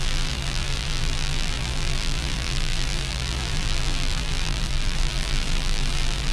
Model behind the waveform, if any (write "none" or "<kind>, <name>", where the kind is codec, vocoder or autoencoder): vocoder, BigVGAN v2